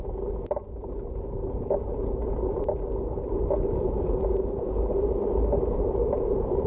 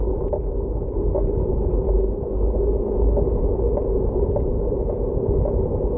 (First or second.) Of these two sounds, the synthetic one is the first